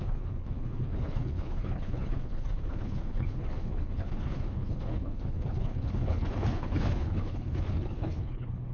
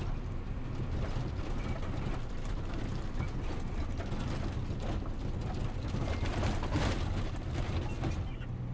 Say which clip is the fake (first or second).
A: first